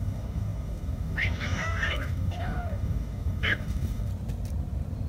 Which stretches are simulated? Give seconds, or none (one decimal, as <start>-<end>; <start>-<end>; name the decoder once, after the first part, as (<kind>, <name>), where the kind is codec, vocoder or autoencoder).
0.0-4.1 (codec, DAC)